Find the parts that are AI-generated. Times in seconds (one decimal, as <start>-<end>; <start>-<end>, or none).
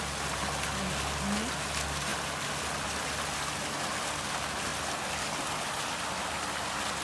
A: none